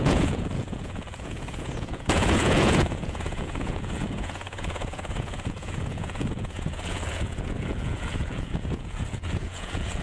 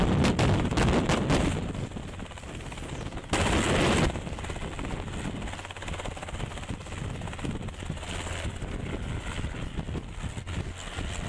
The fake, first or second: first